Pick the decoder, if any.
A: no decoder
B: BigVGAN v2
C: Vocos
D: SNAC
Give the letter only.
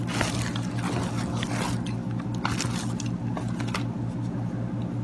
A